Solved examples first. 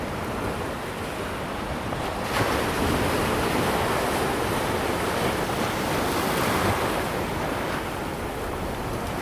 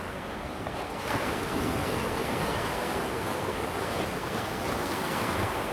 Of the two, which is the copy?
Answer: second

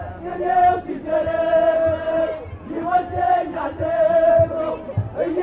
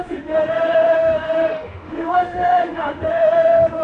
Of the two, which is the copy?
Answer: second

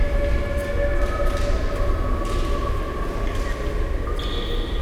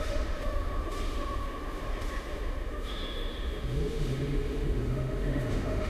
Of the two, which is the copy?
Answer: second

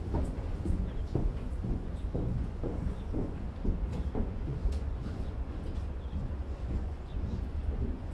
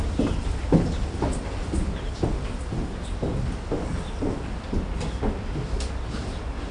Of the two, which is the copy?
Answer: first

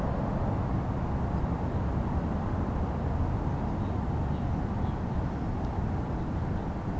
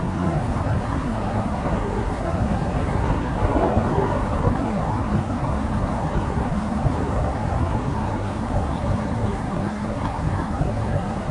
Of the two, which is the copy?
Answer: second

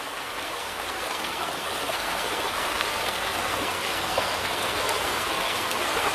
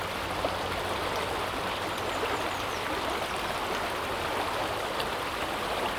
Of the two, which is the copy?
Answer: first